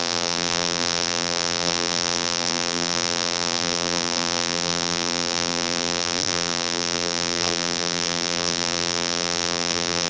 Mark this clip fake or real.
fake